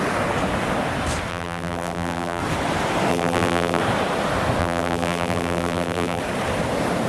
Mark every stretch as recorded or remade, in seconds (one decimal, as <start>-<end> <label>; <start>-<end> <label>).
0.0-1.3 recorded; 1.3-2.4 remade; 2.4-3.1 recorded; 3.1-3.8 remade; 3.8-4.6 recorded; 4.6-6.2 remade; 6.2-7.1 recorded